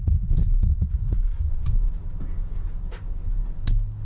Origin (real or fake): real